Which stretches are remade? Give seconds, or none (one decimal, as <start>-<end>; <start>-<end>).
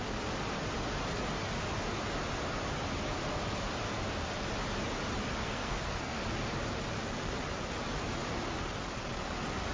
5.4-6.2